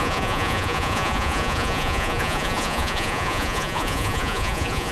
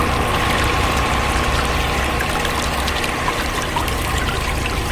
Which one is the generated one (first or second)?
first